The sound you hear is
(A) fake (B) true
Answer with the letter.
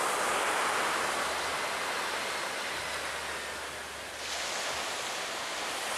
B